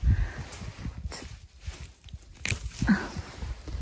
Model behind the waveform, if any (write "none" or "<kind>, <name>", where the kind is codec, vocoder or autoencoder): none